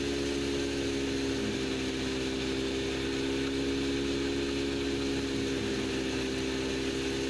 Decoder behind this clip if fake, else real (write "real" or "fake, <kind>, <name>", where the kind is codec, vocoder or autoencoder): real